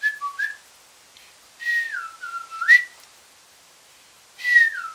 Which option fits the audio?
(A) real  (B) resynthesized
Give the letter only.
A